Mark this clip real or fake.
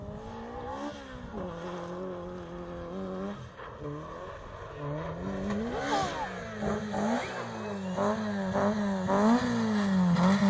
real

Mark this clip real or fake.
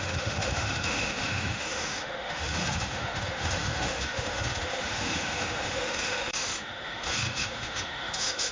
fake